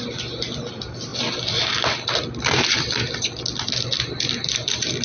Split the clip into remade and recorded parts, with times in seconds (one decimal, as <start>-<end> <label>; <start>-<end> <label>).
0.0-5.0 recorded